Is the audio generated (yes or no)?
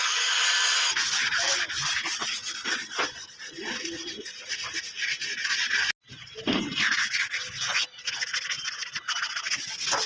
no